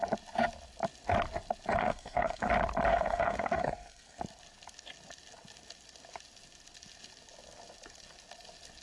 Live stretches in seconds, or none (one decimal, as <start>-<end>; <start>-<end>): 0.0-1.8; 2.5-2.9; 4.2-8.8